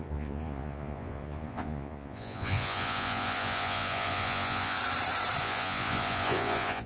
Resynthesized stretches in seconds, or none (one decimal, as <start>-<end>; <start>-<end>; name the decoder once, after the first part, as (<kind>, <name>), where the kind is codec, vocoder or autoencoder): 0.0-4.8 (vocoder, Vocos); 5.4-6.9